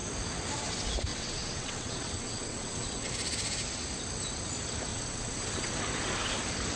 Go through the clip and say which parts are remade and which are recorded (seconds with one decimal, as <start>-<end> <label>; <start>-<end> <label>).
0.0-1.1 recorded; 1.1-3.1 remade; 3.1-4.9 recorded; 4.9-5.8 remade; 5.8-6.8 recorded